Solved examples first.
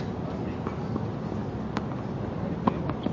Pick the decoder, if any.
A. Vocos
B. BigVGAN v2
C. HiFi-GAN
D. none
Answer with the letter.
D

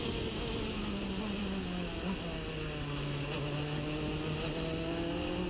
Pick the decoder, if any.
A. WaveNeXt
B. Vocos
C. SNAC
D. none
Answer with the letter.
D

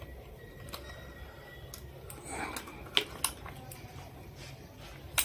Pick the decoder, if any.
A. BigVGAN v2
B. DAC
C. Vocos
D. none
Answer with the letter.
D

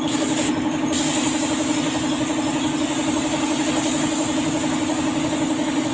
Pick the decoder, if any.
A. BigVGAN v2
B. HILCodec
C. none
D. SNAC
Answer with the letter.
C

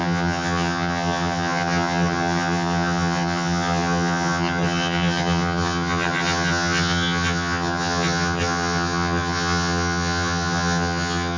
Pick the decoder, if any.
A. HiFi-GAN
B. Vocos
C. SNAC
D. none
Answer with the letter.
A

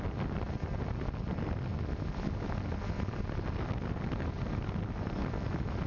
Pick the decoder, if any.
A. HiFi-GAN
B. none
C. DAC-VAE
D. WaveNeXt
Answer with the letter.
B